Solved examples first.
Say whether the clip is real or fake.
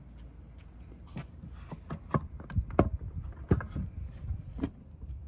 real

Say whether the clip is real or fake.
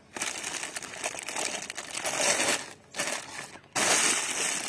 real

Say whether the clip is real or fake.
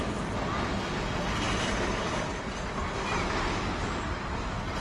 real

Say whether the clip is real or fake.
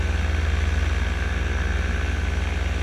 real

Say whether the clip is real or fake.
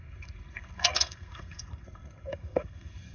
fake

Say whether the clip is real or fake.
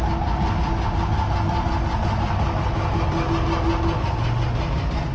real